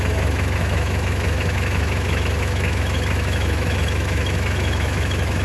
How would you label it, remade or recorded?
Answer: remade